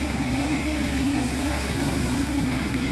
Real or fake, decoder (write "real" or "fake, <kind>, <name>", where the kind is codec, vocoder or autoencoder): fake, codec, SNAC